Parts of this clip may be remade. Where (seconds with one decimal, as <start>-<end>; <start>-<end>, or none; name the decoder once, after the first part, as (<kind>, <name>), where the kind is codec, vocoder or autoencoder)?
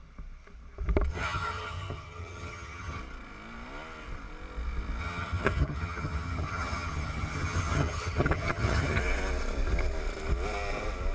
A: 1.1-3.0 (vocoder, HiFi-GAN); 5.0-9.0